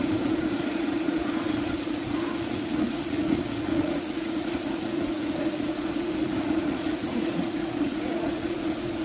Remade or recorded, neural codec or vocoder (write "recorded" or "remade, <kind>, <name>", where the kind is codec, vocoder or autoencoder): remade, vocoder, Vocos